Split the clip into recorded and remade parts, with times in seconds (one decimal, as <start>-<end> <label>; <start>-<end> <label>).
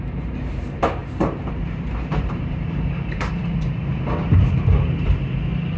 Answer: 0.0-5.8 remade